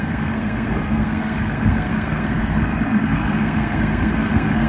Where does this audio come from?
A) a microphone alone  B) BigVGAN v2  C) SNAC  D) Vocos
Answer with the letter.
C